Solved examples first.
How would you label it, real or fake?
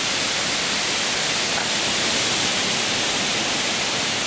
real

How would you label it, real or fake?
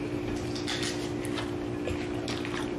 real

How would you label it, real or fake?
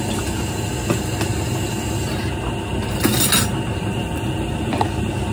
real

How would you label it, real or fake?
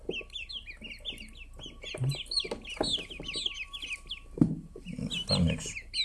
real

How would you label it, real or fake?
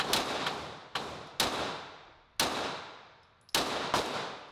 real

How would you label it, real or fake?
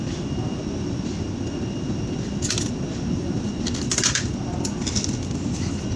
real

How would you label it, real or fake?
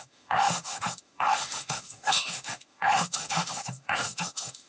fake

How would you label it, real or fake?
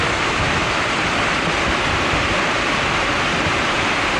real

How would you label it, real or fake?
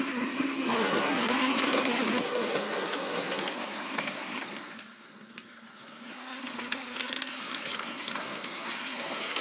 fake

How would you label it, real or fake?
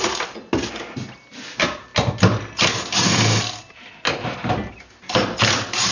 real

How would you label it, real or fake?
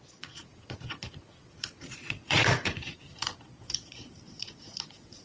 fake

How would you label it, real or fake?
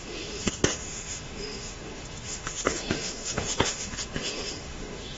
fake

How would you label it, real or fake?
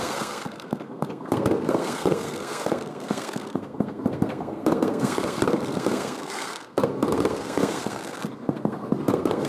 fake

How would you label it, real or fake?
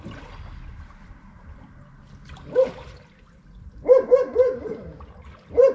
real